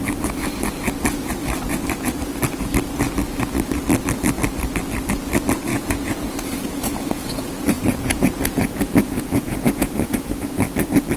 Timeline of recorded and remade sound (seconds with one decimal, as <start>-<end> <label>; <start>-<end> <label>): 0.0-5.7 recorded; 5.7-10.3 remade; 10.3-11.2 recorded